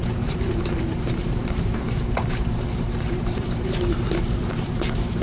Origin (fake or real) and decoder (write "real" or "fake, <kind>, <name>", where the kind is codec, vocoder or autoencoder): fake, vocoder, BigVGAN v2